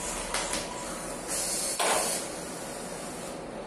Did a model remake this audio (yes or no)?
no